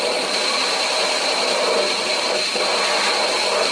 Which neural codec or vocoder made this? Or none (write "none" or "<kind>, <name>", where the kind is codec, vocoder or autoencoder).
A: vocoder, BigVGAN v2